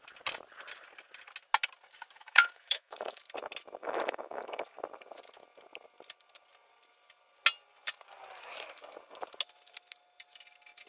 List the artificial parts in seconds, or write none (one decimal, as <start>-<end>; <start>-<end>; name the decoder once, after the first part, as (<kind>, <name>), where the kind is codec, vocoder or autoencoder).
2.2-3.2 (autoencoder, DAC-VAE); 3.8-4.6